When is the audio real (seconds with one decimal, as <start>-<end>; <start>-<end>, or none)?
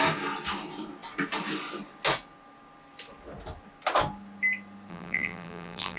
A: 0.0-4.9